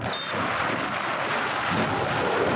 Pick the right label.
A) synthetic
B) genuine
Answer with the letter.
B